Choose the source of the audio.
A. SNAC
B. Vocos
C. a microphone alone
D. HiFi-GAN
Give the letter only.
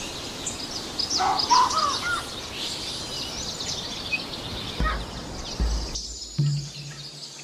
C